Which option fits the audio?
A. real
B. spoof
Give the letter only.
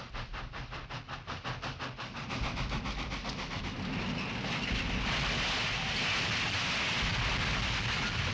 A